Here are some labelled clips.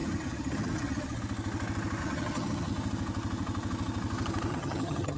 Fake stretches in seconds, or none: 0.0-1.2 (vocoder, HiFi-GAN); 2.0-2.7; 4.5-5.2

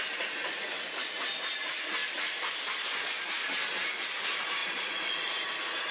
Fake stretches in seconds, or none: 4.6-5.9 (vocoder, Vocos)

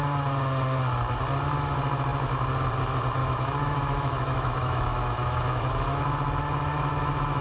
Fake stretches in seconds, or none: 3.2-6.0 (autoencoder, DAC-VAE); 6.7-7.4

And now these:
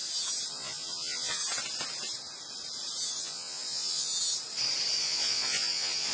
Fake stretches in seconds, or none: 0.5-1.4 (vocoder, Vocos); 3.1-4.1; 5.0-6.1